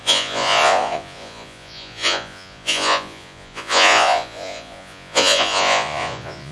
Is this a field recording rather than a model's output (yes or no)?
no